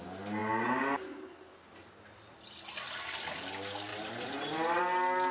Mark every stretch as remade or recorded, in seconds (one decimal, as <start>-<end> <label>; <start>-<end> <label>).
0.0-5.3 recorded